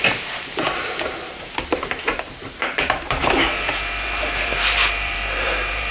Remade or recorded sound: remade